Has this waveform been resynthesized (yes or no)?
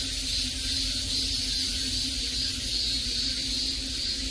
no